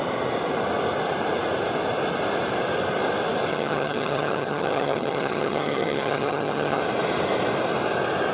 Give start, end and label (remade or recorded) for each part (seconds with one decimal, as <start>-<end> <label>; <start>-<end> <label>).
0.0-3.5 recorded; 3.5-6.8 remade; 6.8-8.3 recorded